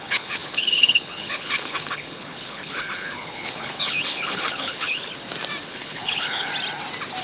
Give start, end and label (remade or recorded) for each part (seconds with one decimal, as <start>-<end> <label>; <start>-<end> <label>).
0.0-5.1 remade; 5.1-5.7 recorded; 5.7-6.5 remade; 6.5-7.2 recorded